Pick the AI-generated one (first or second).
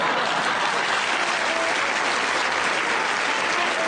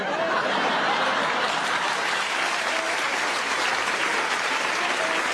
second